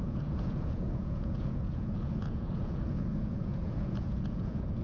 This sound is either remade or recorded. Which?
remade